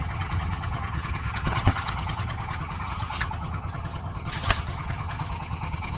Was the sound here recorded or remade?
remade